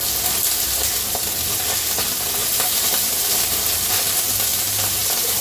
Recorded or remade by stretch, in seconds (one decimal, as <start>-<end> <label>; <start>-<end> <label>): 0.0-2.4 recorded; 2.4-3.9 remade; 3.9-4.5 recorded; 4.5-5.4 remade